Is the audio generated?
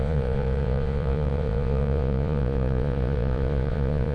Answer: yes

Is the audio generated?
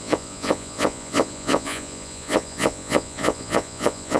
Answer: yes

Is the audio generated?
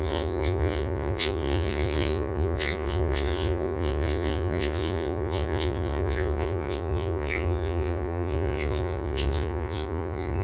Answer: yes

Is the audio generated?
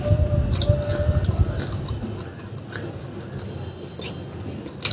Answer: no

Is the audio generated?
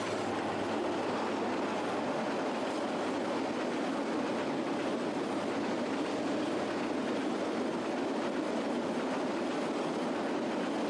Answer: no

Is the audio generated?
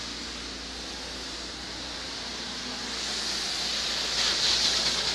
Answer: no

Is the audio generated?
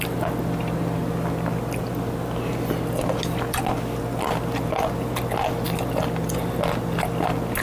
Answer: no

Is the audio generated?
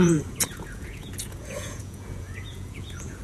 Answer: yes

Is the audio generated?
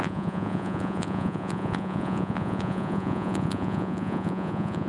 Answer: yes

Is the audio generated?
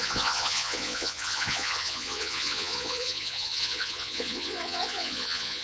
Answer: yes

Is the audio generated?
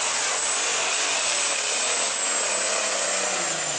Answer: no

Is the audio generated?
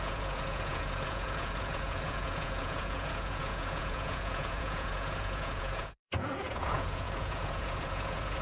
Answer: yes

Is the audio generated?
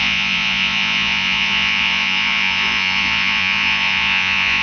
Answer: yes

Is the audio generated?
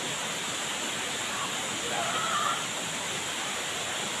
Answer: no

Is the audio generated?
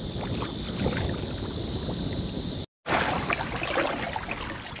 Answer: no